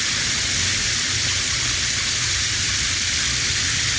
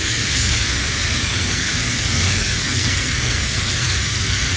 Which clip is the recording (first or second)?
first